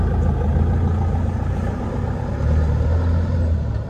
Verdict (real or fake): real